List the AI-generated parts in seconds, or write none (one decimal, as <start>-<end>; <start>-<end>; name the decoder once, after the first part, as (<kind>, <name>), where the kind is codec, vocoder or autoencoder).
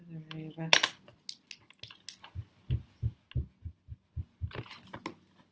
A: none